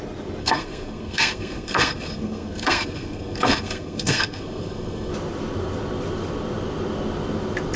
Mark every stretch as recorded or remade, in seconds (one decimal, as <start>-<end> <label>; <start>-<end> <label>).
0.0-0.4 recorded; 0.4-5.1 remade; 5.1-7.8 recorded